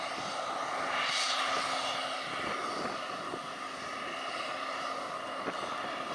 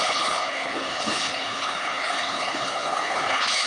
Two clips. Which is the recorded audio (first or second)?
first